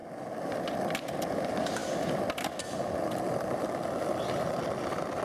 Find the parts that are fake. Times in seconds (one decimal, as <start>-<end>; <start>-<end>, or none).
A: none